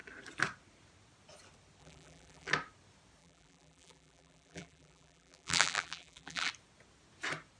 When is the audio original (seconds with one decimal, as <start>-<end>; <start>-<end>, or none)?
0.0-1.8; 2.5-3.2; 6.5-7.6